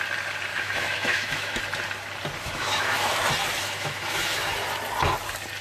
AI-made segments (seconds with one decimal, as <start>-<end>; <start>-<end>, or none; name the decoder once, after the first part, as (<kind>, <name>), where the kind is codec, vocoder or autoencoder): 0.5-1.6 (autoencoder, DAC-VAE); 2.4-3.1; 3.6-4.5